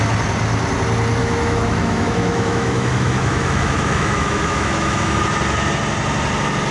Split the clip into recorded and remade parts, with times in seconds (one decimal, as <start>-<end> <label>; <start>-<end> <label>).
0.0-1.2 recorded; 1.2-5.2 remade; 5.2-6.7 recorded